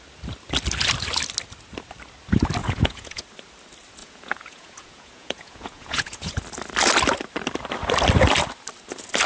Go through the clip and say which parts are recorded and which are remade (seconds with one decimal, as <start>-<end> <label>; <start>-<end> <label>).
0.0-2.6 recorded; 2.6-3.2 remade; 3.2-4.0 recorded; 4.0-6.4 remade; 6.4-9.3 recorded